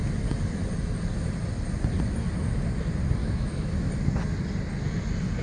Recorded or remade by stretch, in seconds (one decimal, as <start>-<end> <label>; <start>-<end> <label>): 0.0-3.2 recorded; 3.2-3.9 remade; 3.9-5.4 recorded